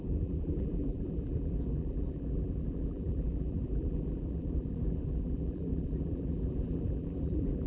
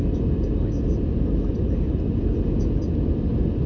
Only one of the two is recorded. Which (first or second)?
second